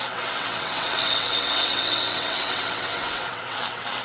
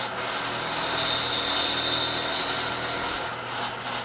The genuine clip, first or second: second